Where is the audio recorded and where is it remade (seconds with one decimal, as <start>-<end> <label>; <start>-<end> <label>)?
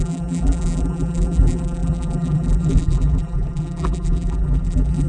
0.0-5.1 remade